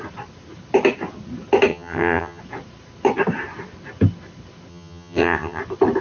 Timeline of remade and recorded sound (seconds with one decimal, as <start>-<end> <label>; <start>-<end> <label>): 0.0-1.7 recorded; 1.7-2.4 remade; 2.4-4.7 recorded; 4.7-5.6 remade; 5.6-6.0 recorded